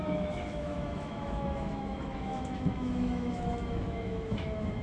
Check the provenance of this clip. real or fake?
fake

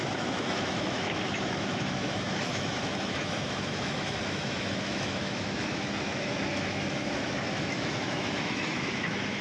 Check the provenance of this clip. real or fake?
fake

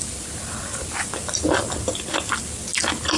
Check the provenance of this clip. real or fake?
real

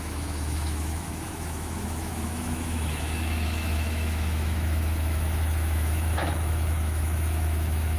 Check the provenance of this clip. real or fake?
fake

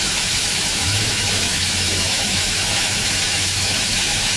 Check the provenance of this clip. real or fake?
fake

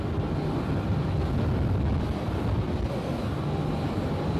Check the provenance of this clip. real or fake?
real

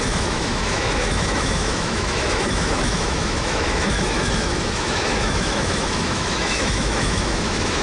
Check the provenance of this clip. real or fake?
fake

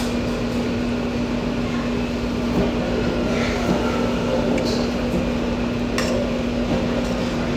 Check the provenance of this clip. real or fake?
real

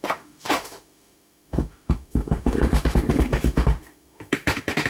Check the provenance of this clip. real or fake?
fake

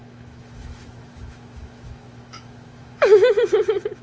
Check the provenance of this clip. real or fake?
fake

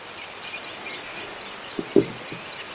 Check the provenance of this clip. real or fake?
real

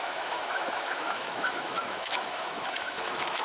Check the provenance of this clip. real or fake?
fake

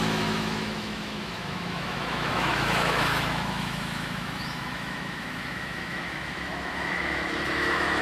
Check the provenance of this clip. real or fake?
fake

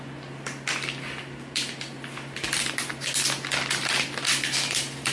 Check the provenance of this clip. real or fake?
real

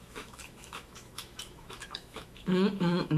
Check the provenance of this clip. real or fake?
fake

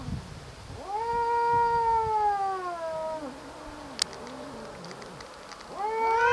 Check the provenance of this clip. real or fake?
real